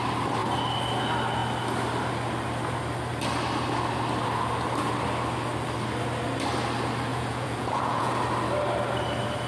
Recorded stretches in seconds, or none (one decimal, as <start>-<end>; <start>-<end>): 0.0-7.1; 8.1-9.5